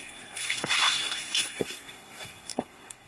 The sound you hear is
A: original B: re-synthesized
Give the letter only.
B